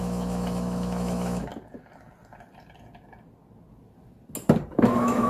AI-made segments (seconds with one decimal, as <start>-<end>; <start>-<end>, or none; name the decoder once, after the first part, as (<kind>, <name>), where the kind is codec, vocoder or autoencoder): 0.0-1.5 (autoencoder, DAC-VAE); 4.7-5.3